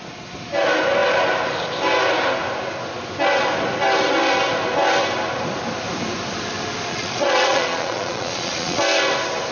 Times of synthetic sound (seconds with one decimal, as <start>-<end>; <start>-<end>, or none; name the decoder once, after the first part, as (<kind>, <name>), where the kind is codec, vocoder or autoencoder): 6.9-8.8 (vocoder, Vocos)